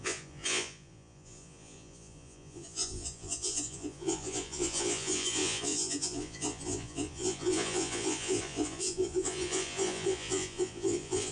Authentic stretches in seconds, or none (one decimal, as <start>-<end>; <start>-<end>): none